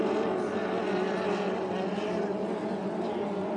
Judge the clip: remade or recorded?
recorded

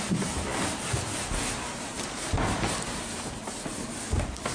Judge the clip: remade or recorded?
recorded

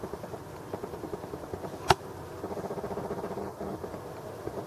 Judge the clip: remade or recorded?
recorded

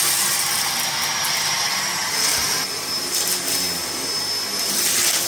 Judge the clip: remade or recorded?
recorded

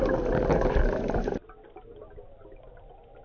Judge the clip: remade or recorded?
recorded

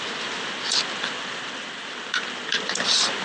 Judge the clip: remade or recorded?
recorded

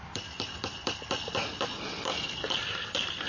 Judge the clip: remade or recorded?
recorded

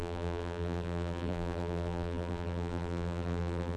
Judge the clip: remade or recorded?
remade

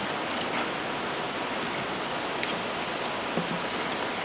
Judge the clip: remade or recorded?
recorded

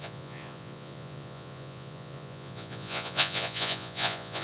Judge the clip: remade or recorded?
remade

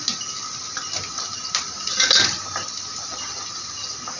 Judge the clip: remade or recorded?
recorded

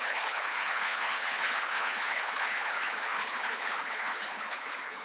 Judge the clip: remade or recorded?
remade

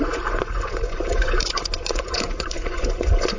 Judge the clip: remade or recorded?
remade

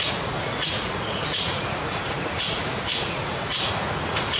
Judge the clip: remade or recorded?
remade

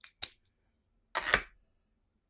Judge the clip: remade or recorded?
recorded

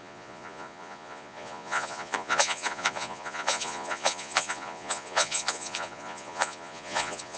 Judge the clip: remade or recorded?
remade